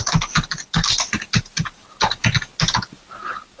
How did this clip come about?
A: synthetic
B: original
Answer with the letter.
B